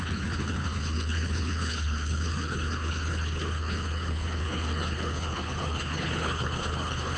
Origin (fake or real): fake